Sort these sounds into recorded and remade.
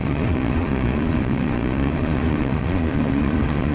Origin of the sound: remade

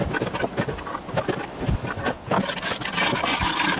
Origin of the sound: recorded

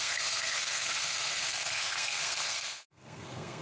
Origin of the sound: remade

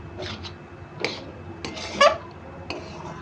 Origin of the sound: recorded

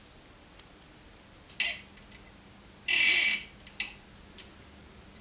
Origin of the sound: recorded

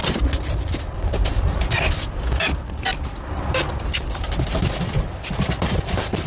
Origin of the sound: recorded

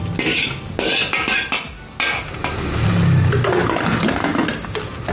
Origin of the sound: recorded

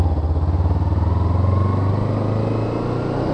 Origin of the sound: recorded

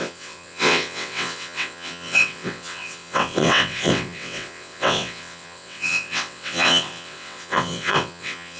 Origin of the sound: remade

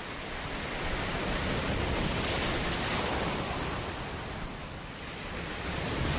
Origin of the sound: recorded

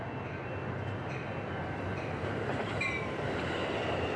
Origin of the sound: recorded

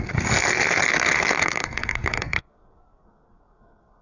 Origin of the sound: remade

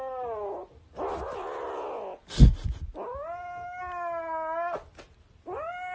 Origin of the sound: recorded